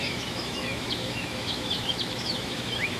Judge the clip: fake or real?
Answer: fake